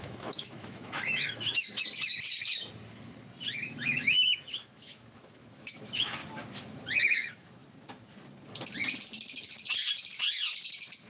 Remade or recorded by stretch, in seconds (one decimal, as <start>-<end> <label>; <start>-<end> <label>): 0.0-1.6 remade; 1.6-3.5 recorded; 3.5-6.2 remade; 6.2-7.0 recorded; 7.0-7.6 remade; 7.6-11.1 recorded